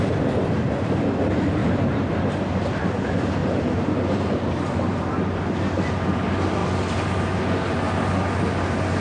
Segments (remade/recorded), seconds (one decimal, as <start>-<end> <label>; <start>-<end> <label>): 0.0-1.6 recorded; 1.6-2.1 remade; 2.1-3.4 recorded; 3.4-4.6 remade; 4.6-9.0 recorded